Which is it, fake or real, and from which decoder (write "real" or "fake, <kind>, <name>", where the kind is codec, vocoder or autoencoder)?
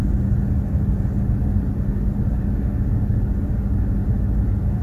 real